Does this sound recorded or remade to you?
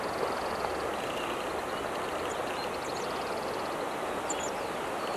recorded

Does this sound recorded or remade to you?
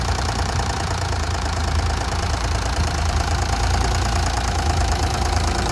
remade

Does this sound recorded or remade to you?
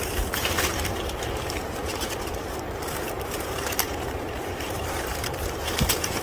remade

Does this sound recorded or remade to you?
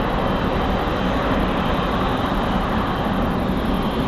recorded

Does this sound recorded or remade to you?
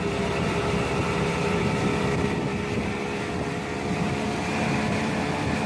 remade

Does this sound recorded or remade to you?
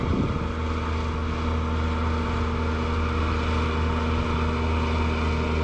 recorded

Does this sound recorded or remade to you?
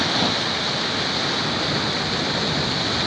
recorded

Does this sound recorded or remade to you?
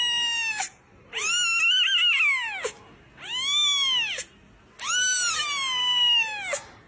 recorded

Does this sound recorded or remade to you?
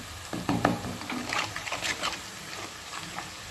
remade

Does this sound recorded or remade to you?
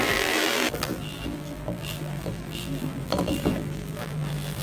remade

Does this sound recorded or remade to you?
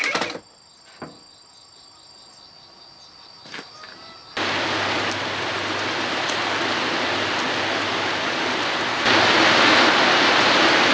recorded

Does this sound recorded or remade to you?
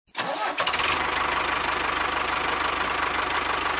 recorded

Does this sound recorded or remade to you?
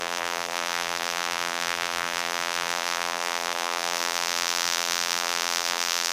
remade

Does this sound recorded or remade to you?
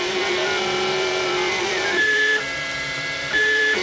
remade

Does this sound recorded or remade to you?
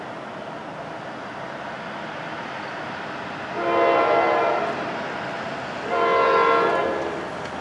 recorded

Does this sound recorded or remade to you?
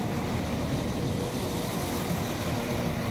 remade